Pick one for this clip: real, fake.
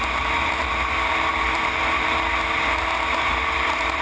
real